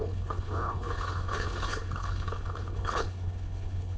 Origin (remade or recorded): remade